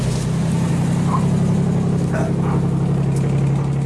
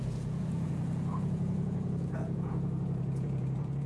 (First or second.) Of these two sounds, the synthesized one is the second